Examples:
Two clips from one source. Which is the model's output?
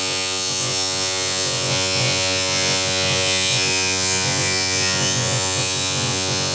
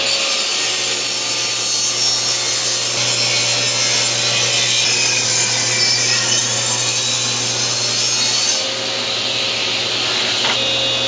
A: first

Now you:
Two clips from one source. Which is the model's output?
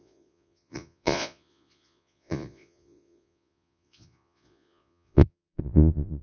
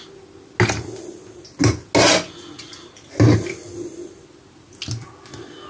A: first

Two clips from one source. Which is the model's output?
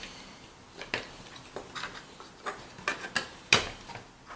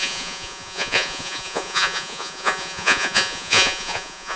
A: second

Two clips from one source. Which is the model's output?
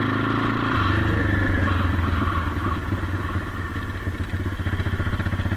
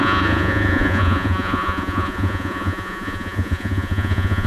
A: second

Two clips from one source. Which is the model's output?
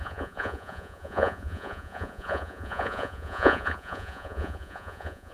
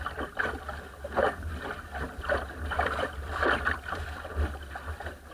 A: first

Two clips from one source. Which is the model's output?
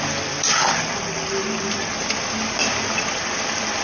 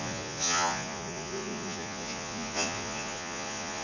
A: second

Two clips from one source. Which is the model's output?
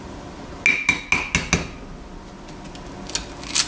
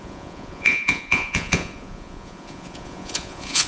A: second